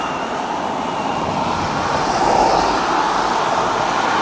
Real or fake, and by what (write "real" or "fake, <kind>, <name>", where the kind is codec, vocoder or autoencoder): real